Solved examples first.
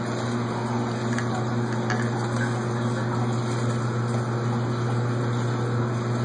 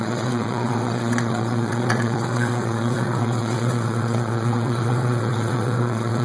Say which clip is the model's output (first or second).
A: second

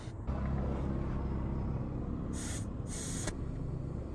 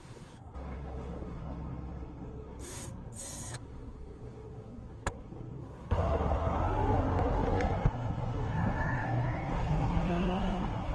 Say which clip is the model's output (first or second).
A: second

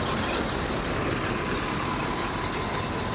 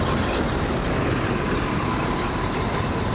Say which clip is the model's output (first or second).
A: second